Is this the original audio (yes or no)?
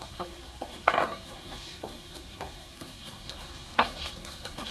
no